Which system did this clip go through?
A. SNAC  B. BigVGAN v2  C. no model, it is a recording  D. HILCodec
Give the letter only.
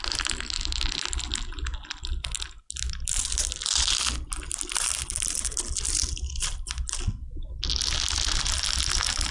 C